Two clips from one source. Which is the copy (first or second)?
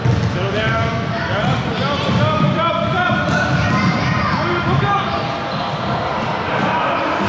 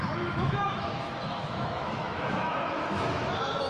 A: second